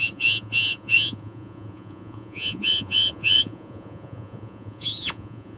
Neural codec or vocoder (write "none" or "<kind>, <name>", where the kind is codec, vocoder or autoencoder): vocoder, Vocos